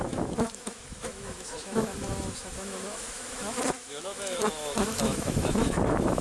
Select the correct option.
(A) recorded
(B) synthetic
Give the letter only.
B